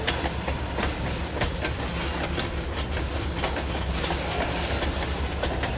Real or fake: real